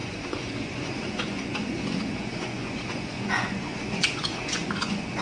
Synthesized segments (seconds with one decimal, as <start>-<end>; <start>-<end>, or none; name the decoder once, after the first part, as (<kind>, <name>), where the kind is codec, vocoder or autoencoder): 0.0-5.2 (vocoder, Vocos)